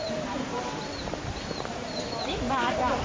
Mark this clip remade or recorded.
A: remade